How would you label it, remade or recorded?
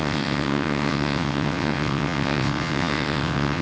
remade